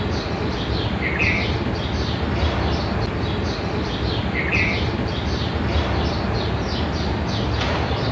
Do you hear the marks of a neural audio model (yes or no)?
no